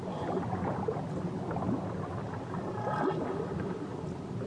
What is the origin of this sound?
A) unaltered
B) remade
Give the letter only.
A